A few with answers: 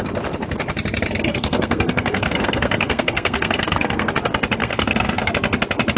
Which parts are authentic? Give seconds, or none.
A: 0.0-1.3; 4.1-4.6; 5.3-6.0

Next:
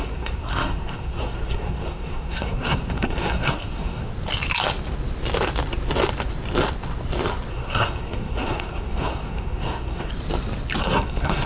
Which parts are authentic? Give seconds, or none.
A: 4.1-7.5; 10.1-10.8

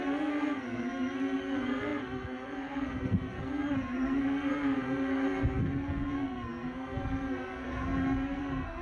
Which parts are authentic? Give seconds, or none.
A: none

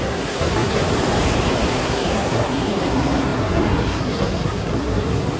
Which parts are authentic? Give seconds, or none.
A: 0.8-1.7

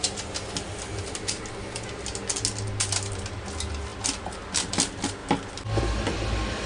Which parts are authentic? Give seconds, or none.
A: 0.0-6.7

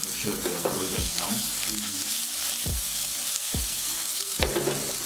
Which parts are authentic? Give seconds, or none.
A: 2.2-2.7; 4.5-5.1

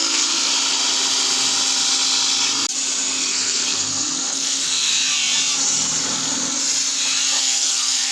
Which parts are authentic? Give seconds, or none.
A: 0.5-3.2; 4.9-7.4

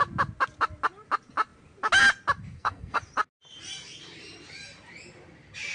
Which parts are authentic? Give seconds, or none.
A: 0.0-2.4; 3.0-5.7